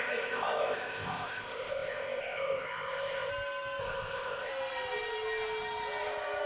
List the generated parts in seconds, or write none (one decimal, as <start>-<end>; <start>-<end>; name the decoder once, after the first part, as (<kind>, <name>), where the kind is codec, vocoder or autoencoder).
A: 0.0-3.3 (codec, ZipCodec); 3.8-4.5